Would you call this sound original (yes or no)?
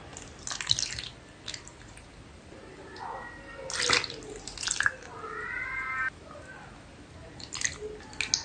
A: yes